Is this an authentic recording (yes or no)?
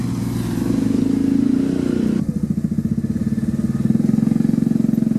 yes